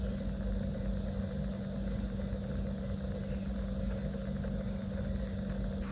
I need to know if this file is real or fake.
real